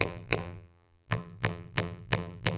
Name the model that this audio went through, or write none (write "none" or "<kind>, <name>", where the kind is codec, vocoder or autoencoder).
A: vocoder, BigVGAN v2